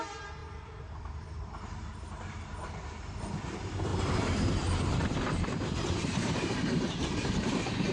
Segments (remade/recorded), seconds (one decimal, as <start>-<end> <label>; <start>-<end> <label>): 0.0-0.4 recorded; 0.4-3.2 remade; 3.2-3.9 recorded; 3.9-7.5 remade; 7.5-7.9 recorded